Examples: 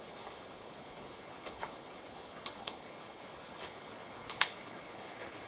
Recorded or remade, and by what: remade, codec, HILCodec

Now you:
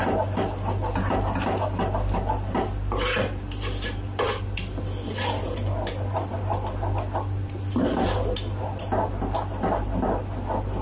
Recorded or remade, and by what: recorded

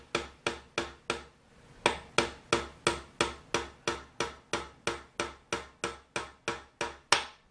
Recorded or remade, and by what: recorded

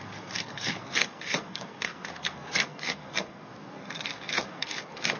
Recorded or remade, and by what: remade, codec, SNAC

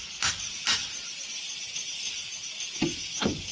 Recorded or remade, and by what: recorded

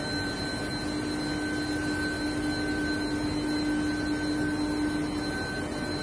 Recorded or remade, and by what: recorded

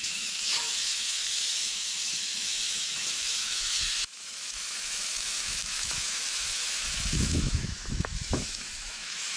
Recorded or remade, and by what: remade, autoencoder, DAC-VAE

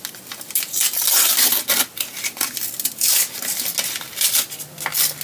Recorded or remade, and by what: recorded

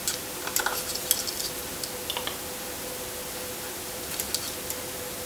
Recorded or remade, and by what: recorded